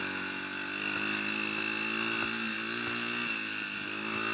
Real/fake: real